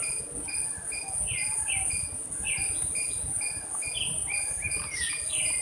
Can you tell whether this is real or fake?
real